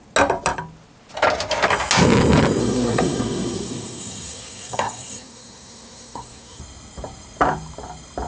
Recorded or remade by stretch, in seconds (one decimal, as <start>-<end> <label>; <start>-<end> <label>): 0.0-2.6 recorded; 2.6-6.6 remade; 6.6-8.3 recorded